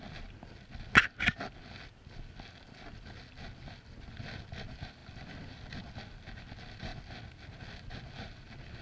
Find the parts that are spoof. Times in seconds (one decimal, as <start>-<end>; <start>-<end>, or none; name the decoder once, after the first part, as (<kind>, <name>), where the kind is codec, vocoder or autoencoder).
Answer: none

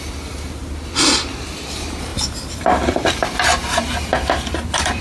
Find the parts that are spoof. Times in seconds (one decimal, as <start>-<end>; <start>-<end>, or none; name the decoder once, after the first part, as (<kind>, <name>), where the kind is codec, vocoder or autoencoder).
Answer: 2.1-5.0 (vocoder, BigVGAN v2)